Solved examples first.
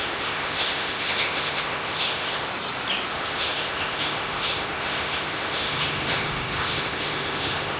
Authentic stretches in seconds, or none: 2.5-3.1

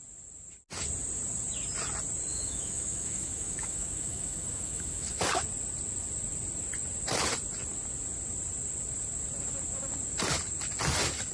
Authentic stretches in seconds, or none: 0.0-2.3; 5.2-11.3

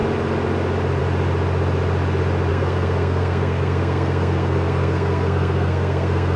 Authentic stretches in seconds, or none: 0.0-2.5